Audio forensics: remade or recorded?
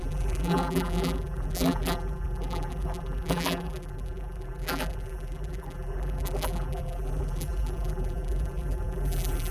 remade